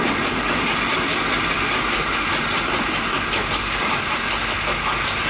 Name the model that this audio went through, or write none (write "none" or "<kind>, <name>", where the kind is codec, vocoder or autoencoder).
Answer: none